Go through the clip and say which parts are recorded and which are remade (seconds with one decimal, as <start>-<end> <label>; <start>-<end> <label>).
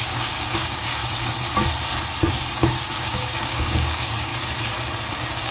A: 0.0-1.0 remade; 1.0-2.3 recorded; 2.3-4.3 remade; 4.3-5.1 recorded; 5.1-5.5 remade